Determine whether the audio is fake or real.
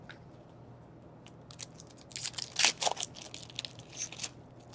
real